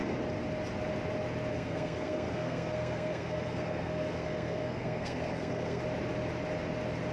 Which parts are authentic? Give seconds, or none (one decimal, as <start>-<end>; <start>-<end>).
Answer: 0.0-1.5; 5.8-7.1

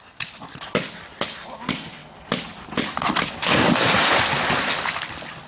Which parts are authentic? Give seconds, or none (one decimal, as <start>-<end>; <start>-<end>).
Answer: 0.0-5.5

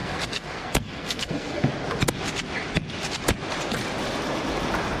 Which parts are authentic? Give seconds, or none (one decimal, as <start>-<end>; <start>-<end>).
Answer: 1.7-5.0

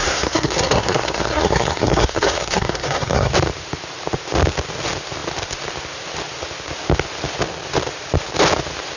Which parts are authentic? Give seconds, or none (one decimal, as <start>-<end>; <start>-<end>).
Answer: 3.3-9.0

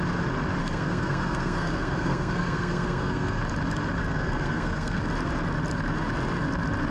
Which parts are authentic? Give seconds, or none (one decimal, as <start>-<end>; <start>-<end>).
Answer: 0.0-0.6; 3.4-4.0; 5.0-6.9

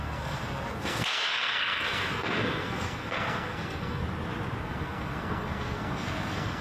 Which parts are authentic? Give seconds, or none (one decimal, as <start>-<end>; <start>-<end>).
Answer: 4.0-4.6

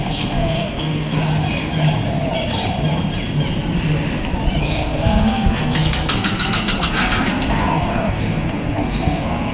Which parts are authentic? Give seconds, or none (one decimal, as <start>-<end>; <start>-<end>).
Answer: 1.3-4.6